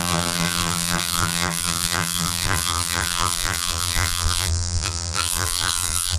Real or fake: fake